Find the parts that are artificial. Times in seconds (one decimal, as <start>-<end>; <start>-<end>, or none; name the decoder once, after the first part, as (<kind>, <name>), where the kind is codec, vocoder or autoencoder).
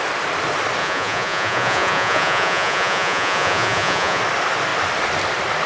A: 0.8-4.2 (vocoder, Vocos)